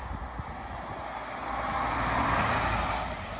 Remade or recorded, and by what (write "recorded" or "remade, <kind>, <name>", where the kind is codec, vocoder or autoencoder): recorded